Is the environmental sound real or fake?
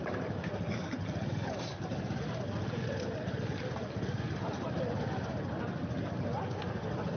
real